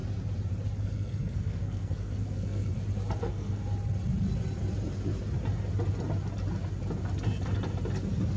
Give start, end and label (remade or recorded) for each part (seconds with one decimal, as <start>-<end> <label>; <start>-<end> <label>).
0.0-0.8 recorded; 0.8-2.7 remade; 2.7-3.2 recorded; 3.2-3.6 remade; 3.6-8.4 recorded